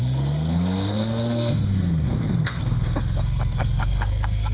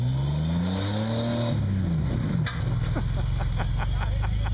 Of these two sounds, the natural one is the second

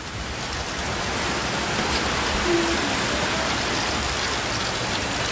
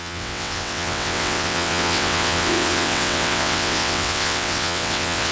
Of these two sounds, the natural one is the first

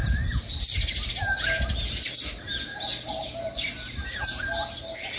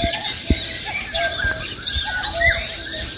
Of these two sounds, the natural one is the first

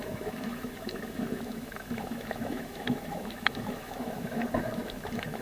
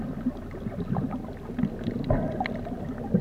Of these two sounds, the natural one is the second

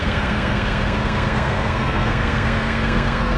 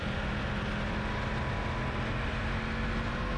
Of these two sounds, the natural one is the second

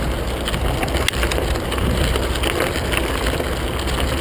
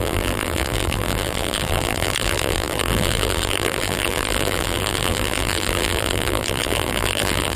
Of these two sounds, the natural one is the first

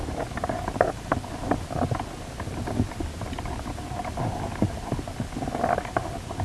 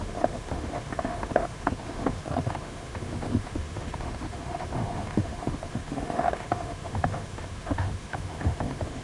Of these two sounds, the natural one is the first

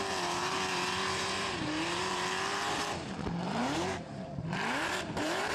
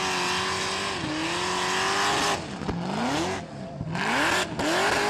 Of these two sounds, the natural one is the second